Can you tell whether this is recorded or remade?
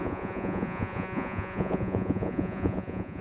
remade